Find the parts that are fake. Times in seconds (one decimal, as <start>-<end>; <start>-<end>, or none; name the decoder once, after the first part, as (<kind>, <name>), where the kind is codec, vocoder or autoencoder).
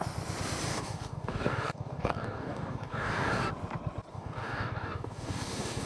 0.7-3.5 (codec, DAC); 4.1-5.9